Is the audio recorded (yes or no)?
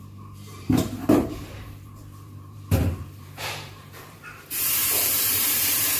no